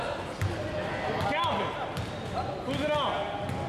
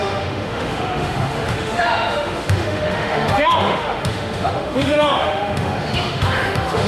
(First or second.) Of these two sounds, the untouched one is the first